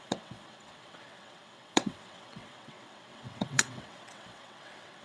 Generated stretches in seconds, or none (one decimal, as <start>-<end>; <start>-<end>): 0.0-5.0